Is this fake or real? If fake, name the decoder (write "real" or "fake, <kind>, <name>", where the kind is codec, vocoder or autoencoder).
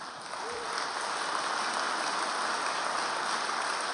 real